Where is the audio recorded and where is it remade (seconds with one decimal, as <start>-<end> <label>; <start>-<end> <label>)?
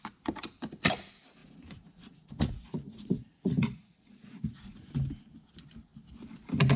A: 0.0-1.4 recorded; 1.4-4.9 remade; 4.9-6.8 recorded